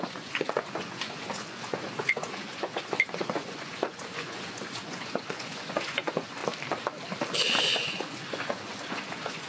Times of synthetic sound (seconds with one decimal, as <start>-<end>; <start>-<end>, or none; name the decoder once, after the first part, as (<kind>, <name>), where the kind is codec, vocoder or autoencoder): 0.0-6.4 (vocoder, Vocos); 7.6-9.5